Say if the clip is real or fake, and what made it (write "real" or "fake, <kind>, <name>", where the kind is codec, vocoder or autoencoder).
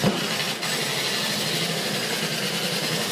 real